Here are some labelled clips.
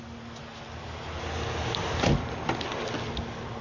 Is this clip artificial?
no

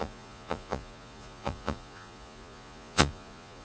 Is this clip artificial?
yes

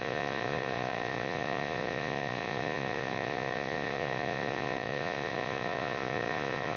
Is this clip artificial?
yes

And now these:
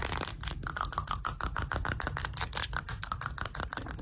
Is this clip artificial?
no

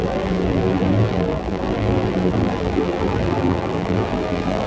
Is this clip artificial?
yes